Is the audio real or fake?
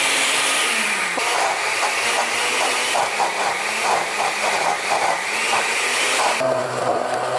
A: fake